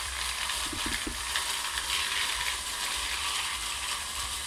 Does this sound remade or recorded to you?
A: remade